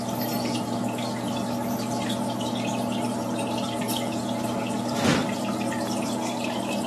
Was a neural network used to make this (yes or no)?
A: no